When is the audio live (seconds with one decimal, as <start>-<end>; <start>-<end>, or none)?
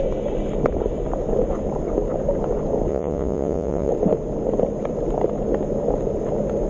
0.0-2.9; 3.9-6.7